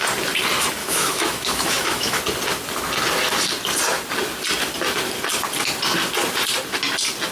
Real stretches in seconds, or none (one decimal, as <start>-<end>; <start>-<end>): 0.0-0.8; 2.2-7.3